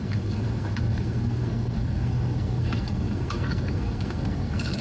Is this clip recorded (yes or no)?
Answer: no